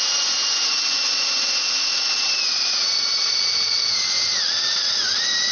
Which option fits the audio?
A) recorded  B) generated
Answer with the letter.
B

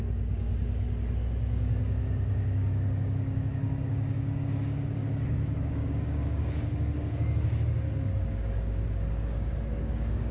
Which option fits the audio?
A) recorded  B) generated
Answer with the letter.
B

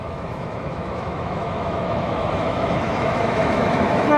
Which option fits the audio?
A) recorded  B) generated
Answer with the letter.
B